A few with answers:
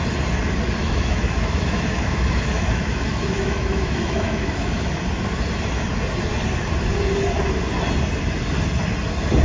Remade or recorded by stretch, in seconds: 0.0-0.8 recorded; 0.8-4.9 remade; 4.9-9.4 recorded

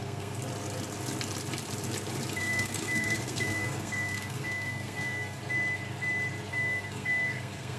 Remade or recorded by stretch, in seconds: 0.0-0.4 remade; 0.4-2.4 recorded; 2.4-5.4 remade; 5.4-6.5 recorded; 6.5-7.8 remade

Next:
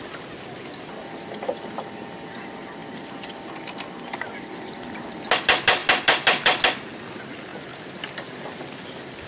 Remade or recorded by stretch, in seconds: 0.0-2.8 recorded; 2.8-3.4 remade; 3.4-9.3 recorded